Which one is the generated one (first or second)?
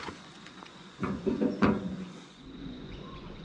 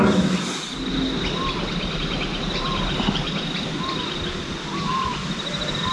first